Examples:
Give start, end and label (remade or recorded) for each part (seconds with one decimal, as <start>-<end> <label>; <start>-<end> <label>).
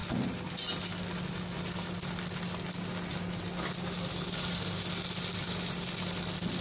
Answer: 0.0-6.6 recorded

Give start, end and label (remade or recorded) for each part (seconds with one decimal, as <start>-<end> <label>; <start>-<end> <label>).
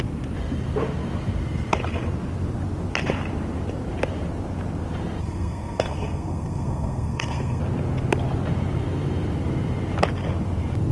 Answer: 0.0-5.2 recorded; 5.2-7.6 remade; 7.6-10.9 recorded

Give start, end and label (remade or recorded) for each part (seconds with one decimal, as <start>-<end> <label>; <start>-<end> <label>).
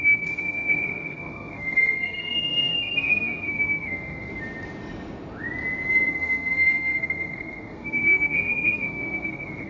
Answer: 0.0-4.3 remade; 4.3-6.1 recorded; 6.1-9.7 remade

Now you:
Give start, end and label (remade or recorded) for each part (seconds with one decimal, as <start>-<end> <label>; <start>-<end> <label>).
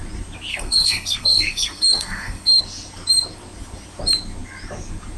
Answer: 0.0-0.5 recorded; 0.5-2.6 remade; 2.6-5.2 recorded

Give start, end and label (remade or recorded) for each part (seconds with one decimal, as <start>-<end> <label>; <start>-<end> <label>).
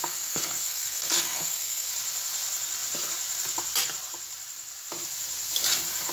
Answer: 0.0-1.9 remade; 1.9-6.1 recorded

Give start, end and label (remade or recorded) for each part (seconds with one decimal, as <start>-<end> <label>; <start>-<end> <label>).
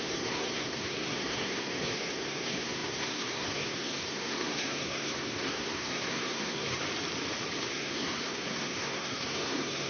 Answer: 0.0-6.8 remade; 6.8-7.7 recorded; 7.7-9.9 remade